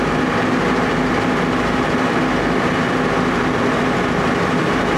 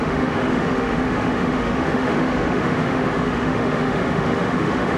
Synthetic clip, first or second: second